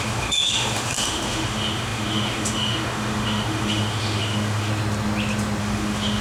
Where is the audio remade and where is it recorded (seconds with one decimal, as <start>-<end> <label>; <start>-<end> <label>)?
0.0-4.7 remade; 4.7-5.6 recorded; 5.6-6.2 remade